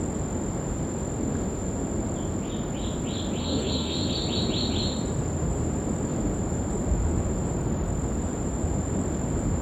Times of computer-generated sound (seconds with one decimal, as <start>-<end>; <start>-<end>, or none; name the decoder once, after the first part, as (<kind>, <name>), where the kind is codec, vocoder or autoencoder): 3.4-4.1 (codec, SNAC)